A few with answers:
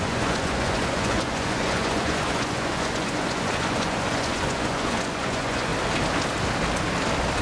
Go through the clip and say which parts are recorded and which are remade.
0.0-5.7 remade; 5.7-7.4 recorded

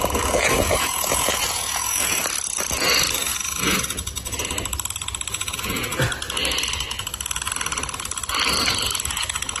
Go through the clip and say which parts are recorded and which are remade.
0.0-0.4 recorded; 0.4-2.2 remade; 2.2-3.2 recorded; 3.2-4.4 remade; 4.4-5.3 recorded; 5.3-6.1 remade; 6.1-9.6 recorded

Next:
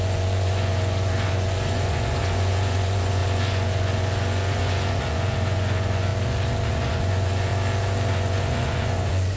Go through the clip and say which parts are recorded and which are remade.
0.0-6.1 remade; 6.1-6.7 recorded; 6.7-7.5 remade; 7.5-8.1 recorded; 8.1-9.4 remade

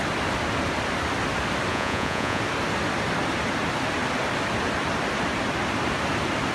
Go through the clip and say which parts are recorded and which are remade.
0.0-1.7 recorded; 1.7-2.4 remade; 2.4-6.5 recorded

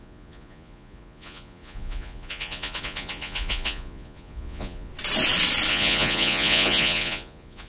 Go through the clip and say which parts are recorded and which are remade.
0.0-4.9 remade; 4.9-5.7 recorded; 5.7-7.7 remade

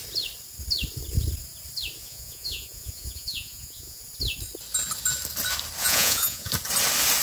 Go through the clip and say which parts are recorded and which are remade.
0.0-2.0 recorded; 2.0-4.0 remade; 4.0-5.8 recorded; 5.8-6.5 remade; 6.5-7.2 recorded

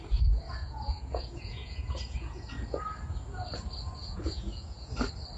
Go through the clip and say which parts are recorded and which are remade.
0.0-0.6 recorded; 0.6-2.5 remade; 2.5-4.0 recorded; 4.0-4.9 remade; 4.9-5.4 recorded